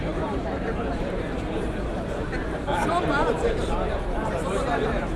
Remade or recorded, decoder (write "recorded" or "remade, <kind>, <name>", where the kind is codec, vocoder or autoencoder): remade, vocoder, BigVGAN v2